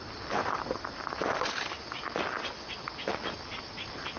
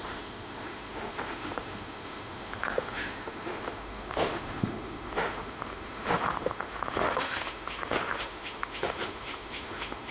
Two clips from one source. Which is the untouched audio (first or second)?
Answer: first